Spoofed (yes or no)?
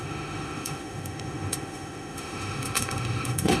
yes